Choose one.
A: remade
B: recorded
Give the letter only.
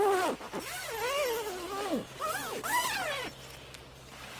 B